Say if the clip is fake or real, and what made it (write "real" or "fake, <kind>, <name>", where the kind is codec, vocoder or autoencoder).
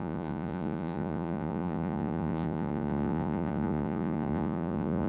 fake, vocoder, Vocos